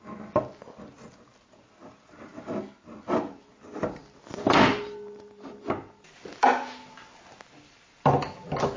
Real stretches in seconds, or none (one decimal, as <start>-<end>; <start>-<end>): 0.0-8.8